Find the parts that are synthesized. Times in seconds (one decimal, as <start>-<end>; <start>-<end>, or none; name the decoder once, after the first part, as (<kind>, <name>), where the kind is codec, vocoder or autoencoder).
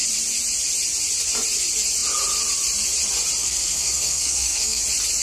3.4-4.8 (codec, SNAC)